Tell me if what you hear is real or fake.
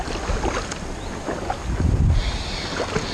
real